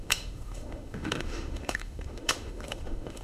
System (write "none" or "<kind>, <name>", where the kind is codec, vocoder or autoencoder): autoencoder, DAC-VAE